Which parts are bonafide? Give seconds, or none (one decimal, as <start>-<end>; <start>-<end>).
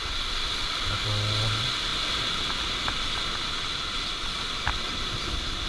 0.0-5.7